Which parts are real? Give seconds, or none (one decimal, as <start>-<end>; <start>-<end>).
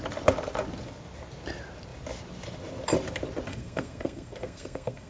0.0-3.5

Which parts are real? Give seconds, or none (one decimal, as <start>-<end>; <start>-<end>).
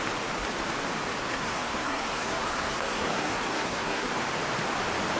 0.0-1.2; 4.1-5.2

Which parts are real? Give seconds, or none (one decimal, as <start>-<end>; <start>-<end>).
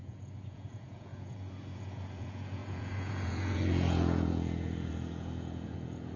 none